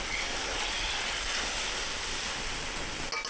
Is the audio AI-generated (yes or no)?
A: no